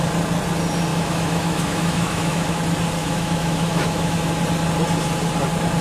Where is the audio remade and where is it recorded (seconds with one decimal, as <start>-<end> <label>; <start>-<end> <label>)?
0.0-0.9 recorded; 0.9-2.6 remade; 2.6-3.0 recorded; 3.0-4.4 remade; 4.4-5.8 recorded